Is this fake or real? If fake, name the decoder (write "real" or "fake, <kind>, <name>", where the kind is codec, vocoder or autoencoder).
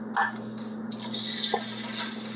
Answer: real